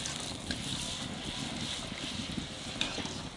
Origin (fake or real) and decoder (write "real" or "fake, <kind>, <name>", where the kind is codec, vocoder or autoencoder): real